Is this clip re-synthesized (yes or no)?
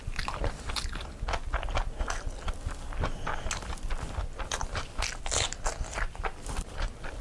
no